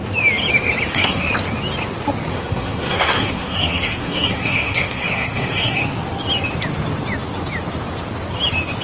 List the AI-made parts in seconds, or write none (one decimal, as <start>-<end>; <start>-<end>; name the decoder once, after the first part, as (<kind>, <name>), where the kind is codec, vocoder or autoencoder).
0.9-1.3 (codec, SNAC); 2.3-5.8